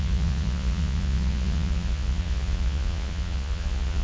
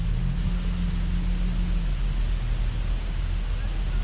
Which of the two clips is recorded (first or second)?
second